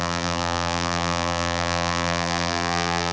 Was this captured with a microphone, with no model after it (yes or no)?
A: no